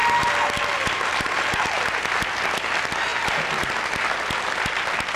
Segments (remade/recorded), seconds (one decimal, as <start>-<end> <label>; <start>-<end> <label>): 0.0-5.2 recorded